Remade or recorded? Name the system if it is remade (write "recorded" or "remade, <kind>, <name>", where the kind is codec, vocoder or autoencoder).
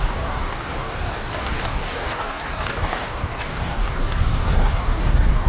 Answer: remade, codec, DAC